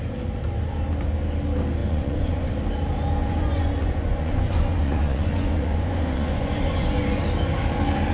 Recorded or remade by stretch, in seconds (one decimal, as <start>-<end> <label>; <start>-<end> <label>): 0.0-1.8 recorded; 1.8-2.5 remade; 2.5-3.2 recorded; 3.2-7.2 remade; 7.2-8.1 recorded